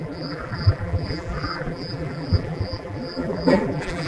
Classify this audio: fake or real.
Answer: fake